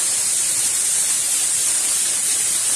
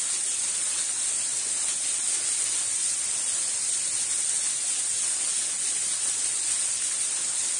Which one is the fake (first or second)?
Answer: first